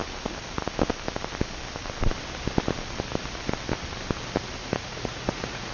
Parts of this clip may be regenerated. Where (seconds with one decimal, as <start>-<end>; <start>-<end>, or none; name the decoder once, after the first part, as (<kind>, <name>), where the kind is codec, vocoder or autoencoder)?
4.6-5.7 (vocoder, Vocos)